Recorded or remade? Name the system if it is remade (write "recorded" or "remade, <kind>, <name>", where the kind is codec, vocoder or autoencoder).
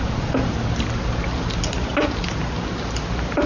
recorded